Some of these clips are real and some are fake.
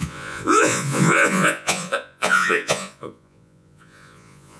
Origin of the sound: fake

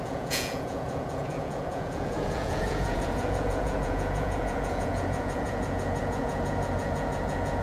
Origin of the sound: fake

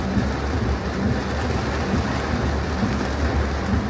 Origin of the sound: real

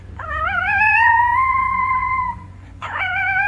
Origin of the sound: fake